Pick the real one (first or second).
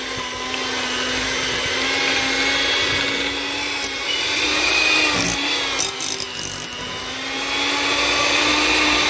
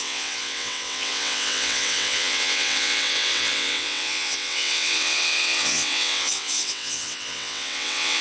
first